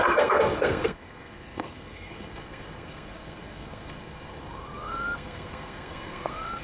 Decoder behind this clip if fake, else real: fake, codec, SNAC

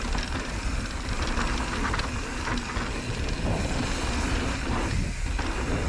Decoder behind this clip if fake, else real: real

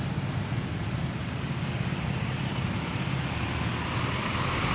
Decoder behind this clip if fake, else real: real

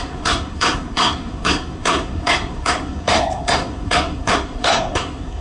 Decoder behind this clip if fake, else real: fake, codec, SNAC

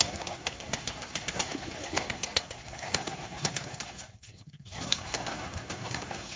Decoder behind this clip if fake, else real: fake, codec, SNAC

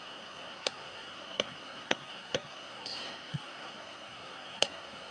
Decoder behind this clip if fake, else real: fake, codec, SNAC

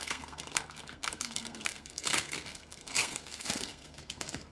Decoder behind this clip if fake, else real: fake, codec, SNAC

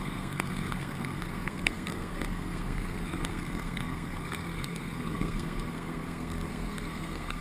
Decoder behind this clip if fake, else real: fake, codec, SNAC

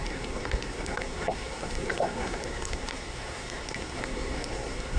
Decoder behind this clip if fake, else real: fake, codec, SNAC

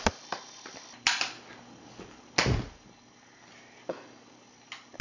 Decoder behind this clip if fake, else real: real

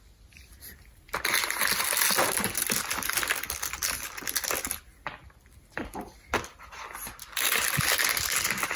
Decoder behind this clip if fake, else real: real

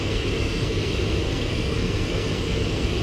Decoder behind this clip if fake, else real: fake, codec, SNAC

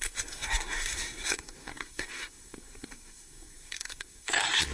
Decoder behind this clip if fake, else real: fake, codec, SNAC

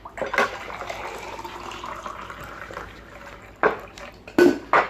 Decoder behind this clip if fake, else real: real